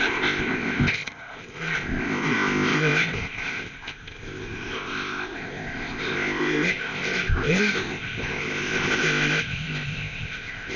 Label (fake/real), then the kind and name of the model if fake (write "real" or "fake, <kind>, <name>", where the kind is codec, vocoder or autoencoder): fake, codec, ZipCodec